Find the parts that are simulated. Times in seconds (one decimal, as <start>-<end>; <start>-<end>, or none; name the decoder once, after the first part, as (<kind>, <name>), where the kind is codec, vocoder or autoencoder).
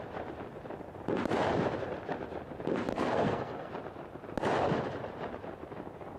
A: 2.9-3.7 (codec, SNAC)